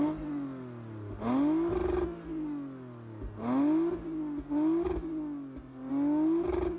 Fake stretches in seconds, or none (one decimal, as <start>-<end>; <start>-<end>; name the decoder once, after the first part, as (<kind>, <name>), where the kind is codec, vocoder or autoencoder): none